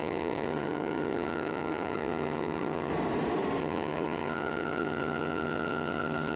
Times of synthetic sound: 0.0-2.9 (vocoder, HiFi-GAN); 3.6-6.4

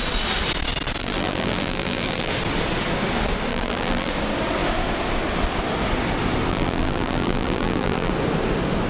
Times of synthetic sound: 1.0-2.3 (vocoder, BigVGAN v2); 3.5-4.1; 6.5-8.1